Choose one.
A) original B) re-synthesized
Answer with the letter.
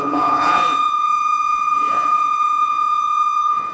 B